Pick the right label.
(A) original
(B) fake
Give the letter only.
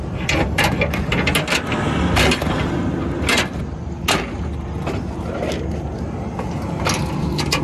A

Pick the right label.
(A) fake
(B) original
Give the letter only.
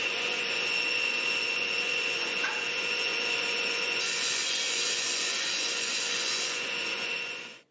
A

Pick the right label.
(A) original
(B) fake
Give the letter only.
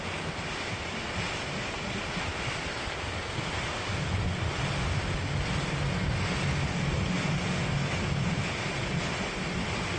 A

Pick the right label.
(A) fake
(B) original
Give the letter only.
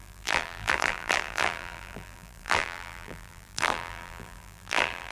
A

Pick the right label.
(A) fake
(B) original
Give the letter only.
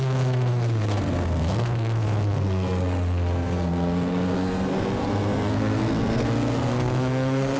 A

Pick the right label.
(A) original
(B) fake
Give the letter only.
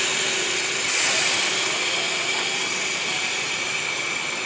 A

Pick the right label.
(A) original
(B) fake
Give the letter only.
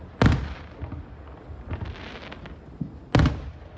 A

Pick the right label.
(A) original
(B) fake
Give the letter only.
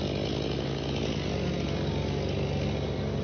A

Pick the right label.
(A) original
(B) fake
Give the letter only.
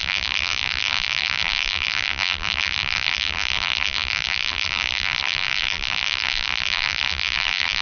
B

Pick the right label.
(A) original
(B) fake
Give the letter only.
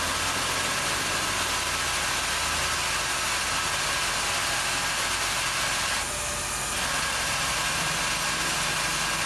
A